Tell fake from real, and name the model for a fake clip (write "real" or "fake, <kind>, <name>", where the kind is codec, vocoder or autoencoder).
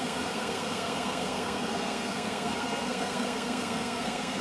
fake, codec, SNAC